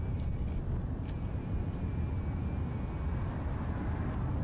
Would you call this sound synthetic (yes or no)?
no